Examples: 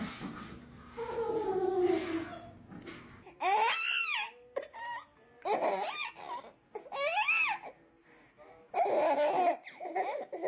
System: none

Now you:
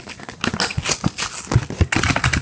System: none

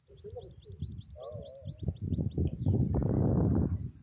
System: none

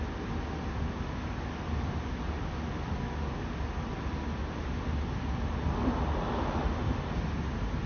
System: none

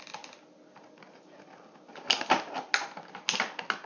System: none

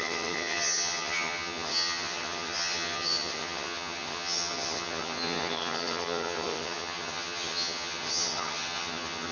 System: vocoder, HiFi-GAN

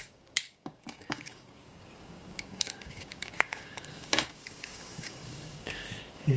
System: codec, DAC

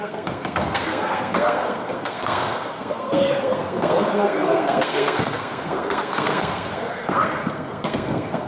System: codec, SNAC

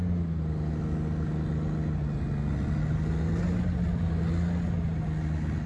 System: none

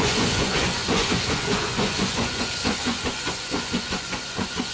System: vocoder, Vocos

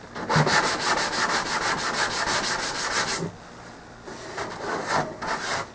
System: none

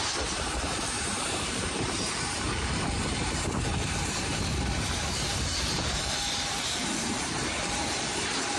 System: vocoder, BigVGAN v2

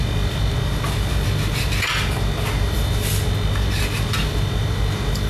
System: none